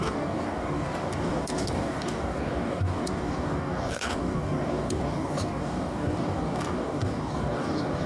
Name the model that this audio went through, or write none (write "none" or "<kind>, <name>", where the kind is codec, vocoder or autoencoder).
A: codec, DAC